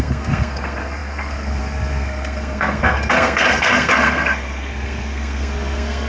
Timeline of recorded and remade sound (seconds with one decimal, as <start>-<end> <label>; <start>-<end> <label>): 0.0-6.1 remade